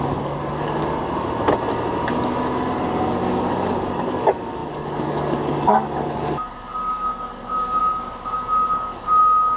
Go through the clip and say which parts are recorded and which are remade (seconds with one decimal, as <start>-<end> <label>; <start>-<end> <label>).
0.0-0.8 remade; 0.8-3.5 recorded; 3.5-9.6 remade